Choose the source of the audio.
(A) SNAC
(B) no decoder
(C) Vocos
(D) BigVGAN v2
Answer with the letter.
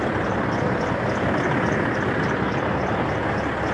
B